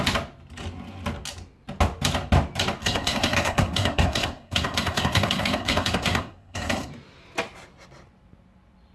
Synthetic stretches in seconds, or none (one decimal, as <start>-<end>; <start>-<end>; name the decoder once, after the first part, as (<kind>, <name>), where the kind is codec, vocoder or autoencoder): 2.8-6.9 (codec, SNAC)